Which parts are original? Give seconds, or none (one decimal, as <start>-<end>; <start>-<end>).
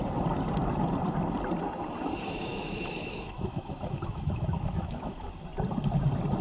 0.0-2.5; 5.3-6.4